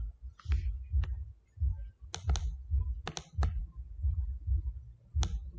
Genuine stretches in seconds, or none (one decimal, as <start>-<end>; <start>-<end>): 0.0-5.6